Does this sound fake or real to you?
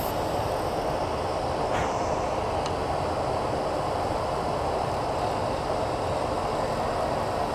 real